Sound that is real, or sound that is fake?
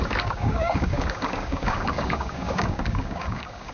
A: fake